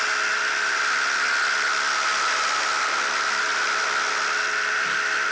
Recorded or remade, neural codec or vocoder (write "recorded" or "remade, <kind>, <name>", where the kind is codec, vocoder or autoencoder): recorded